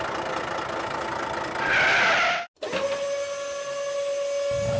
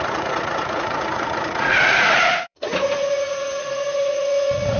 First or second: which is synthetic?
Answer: second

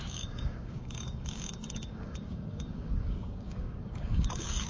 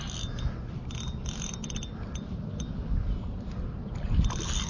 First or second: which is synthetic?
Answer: first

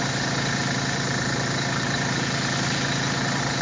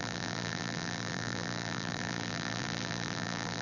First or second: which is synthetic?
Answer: second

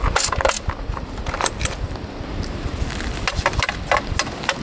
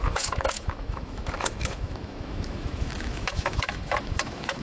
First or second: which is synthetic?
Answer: second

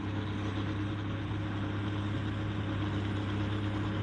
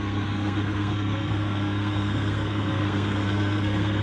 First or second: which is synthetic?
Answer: second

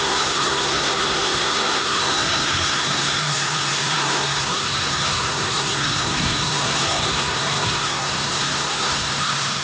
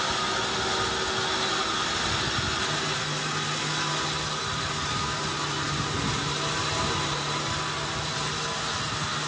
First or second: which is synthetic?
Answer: first